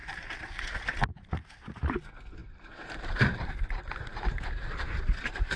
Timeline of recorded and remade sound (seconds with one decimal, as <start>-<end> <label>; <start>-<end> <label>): 0.0-0.6 remade; 0.6-2.4 recorded; 2.4-5.6 remade